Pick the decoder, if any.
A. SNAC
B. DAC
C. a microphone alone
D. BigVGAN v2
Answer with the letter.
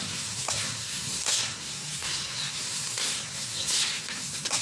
A